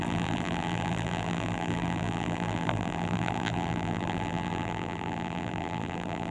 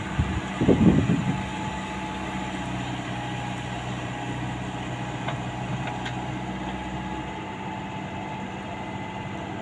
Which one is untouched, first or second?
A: second